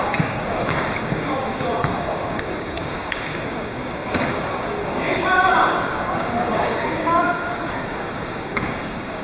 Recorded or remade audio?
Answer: remade